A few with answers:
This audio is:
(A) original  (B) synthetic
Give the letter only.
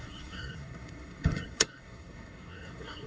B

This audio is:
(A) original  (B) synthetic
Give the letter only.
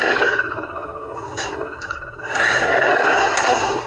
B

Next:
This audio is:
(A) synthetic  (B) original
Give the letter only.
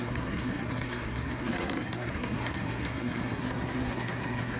A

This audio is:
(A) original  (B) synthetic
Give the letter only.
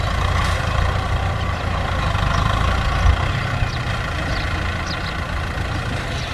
A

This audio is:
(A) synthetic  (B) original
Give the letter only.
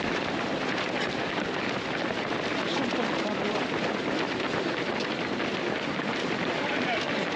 B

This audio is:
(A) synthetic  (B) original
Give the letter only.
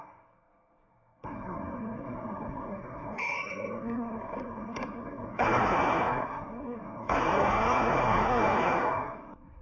A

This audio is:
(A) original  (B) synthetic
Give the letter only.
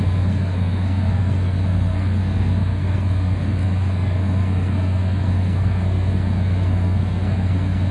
B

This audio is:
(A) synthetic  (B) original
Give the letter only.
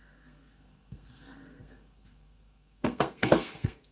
A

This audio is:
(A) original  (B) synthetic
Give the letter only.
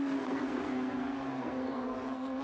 B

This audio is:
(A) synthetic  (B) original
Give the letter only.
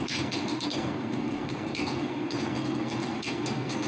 A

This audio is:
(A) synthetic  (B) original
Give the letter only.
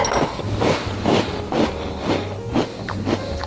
B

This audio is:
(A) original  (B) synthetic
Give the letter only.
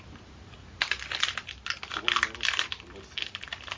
A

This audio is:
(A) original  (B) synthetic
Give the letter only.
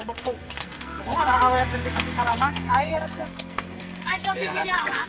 B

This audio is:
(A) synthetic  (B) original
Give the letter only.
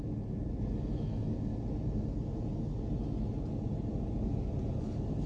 B